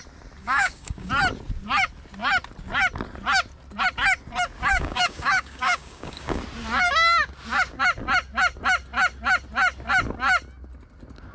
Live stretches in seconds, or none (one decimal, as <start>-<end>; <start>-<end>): 0.0-0.4; 1.1-4.7; 6.4-11.3